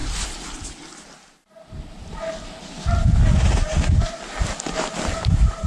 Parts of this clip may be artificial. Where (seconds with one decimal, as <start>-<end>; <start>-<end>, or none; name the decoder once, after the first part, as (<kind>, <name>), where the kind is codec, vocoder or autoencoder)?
none